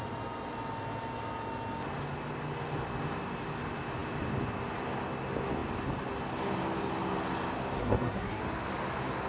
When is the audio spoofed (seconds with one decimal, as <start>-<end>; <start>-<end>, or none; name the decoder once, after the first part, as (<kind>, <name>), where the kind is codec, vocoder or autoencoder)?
7.8-8.4 (codec, SNAC)